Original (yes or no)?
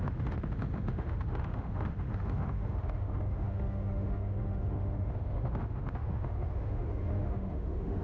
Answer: no